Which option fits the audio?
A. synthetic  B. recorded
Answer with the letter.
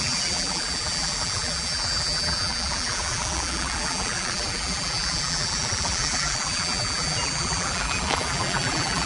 A